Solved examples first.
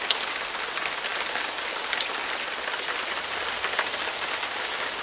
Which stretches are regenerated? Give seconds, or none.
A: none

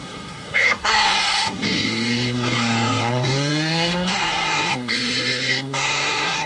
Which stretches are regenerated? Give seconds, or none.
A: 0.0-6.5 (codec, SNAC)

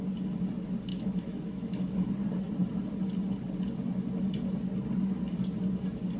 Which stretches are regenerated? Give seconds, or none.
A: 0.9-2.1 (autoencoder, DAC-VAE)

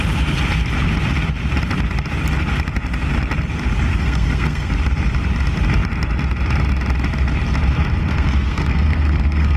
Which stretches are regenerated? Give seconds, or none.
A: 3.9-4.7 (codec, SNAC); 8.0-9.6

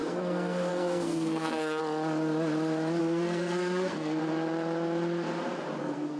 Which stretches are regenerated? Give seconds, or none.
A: 0.0-1.8 (codec, SNAC); 3.0-4.2; 5.8-6.2